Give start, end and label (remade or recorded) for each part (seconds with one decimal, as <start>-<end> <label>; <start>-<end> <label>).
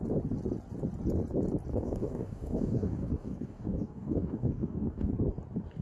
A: 0.0-1.7 recorded; 1.7-5.1 remade; 5.1-5.8 recorded